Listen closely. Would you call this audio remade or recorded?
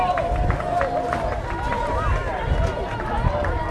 recorded